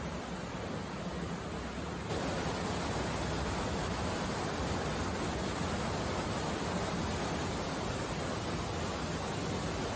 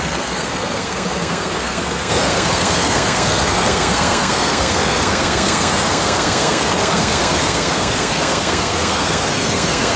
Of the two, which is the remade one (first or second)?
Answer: second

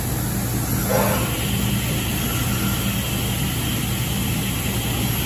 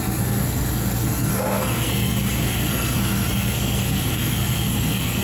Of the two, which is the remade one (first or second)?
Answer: second